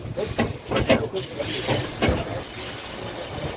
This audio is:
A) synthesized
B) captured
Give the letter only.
B